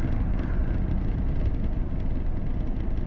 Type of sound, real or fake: real